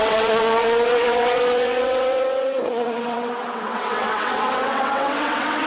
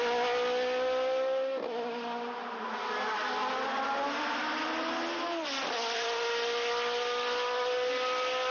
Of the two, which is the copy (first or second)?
first